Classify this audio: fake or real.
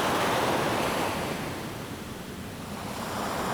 real